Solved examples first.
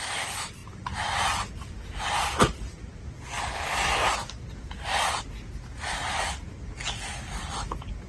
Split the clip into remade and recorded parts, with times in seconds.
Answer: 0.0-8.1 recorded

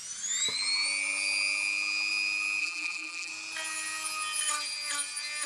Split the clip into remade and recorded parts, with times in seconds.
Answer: 0.0-2.6 recorded; 2.6-3.3 remade; 3.3-5.5 recorded

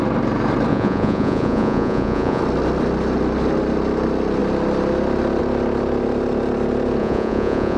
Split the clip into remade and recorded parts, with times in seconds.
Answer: 0.0-0.7 recorded; 0.7-2.4 remade; 2.4-7.0 recorded; 7.0-7.8 remade

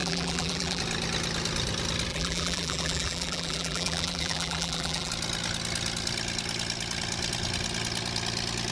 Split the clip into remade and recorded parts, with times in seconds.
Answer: 0.0-0.8 remade; 0.8-2.1 recorded; 2.1-5.1 remade; 5.1-8.7 recorded

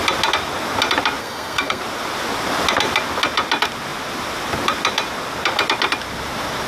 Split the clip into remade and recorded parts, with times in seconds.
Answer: 0.0-1.2 recorded; 1.2-1.8 remade; 1.8-6.7 recorded

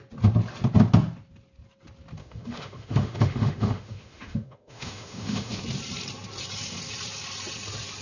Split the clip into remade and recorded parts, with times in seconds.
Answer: 0.0-2.2 recorded; 2.2-5.6 remade; 5.6-8.0 recorded